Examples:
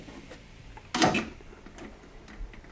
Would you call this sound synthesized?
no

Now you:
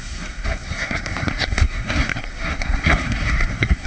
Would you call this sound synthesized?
yes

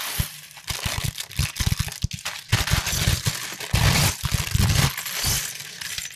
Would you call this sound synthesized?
no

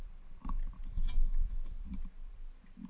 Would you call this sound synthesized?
yes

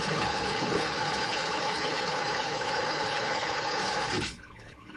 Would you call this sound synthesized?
yes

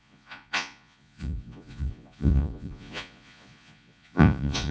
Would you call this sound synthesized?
yes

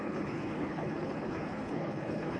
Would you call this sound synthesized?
yes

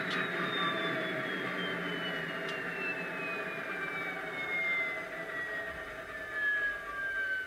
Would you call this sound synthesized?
no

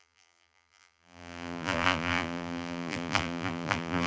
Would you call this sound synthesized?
yes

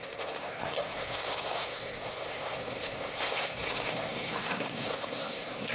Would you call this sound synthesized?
yes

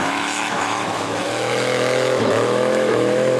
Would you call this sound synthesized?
yes